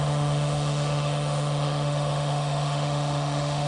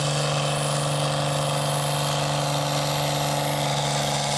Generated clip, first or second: first